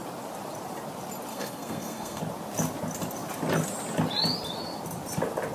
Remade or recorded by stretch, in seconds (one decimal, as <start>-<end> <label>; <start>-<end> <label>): 0.0-1.3 recorded; 1.3-2.2 remade; 2.2-5.5 recorded